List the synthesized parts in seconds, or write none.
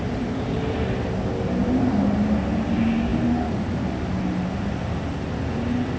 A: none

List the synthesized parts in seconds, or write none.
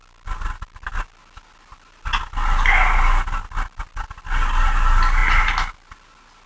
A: none